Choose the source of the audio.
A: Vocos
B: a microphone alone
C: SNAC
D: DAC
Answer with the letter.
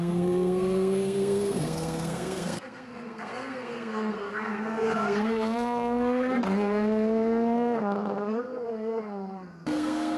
C